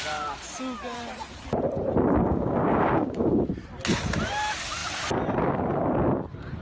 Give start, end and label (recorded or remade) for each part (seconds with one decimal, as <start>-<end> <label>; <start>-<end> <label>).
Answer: 0.0-2.2 recorded; 2.2-3.4 remade; 3.4-6.6 recorded